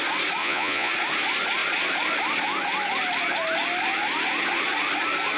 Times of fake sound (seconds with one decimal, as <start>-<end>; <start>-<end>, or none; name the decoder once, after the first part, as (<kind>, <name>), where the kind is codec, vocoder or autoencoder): 0.4-0.9 (vocoder, Vocos)